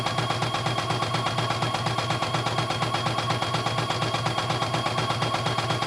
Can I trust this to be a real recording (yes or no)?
yes